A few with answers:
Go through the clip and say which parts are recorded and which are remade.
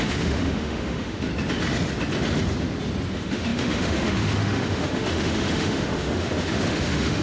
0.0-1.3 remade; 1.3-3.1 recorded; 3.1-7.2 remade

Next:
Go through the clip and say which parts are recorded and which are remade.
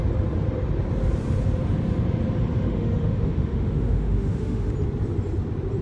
0.0-2.5 recorded; 2.5-4.7 remade; 4.7-5.8 recorded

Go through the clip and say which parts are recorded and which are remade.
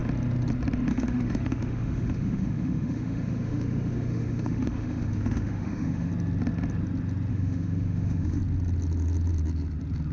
0.0-0.9 recorded; 0.9-6.1 remade; 6.1-7.3 recorded; 7.3-8.4 remade; 8.4-10.1 recorded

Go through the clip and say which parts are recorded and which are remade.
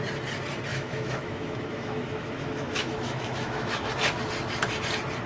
0.0-0.7 recorded; 0.7-3.9 remade; 3.9-5.3 recorded